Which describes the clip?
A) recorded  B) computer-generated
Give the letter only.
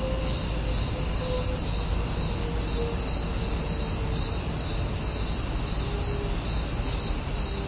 A